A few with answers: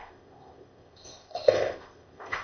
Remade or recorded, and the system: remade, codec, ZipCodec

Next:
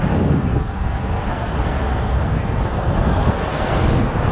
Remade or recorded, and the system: remade, codec, SNAC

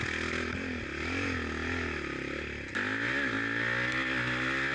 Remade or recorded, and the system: recorded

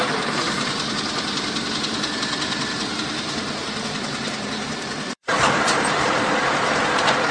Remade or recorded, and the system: remade, vocoder, BigVGAN v2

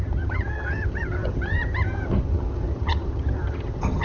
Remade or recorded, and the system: remade, vocoder, HiFi-GAN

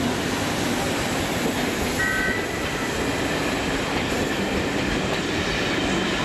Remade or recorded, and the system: recorded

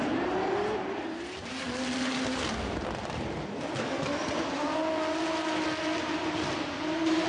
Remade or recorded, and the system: recorded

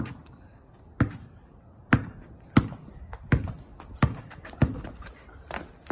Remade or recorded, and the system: recorded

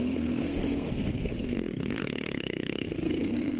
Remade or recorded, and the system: remade, codec, SNAC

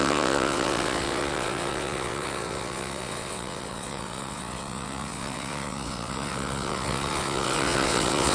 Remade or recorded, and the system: remade, vocoder, WaveNeXt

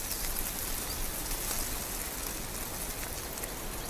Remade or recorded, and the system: recorded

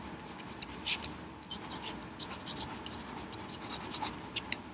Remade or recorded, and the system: recorded